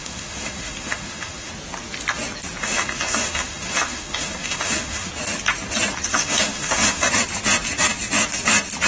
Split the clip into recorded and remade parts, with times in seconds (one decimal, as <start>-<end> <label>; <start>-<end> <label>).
0.0-1.5 remade; 1.5-2.6 recorded; 2.6-5.1 remade; 5.1-6.1 recorded; 6.1-7.1 remade; 7.1-8.9 recorded